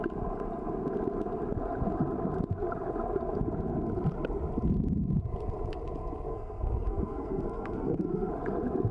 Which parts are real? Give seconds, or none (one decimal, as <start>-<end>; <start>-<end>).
0.0-6.3; 8.3-8.9